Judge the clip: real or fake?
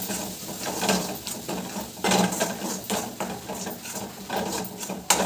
real